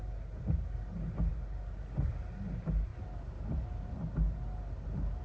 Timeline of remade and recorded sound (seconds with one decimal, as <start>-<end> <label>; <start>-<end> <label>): 0.0-5.2 recorded